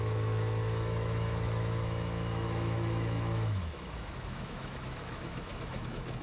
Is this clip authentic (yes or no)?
no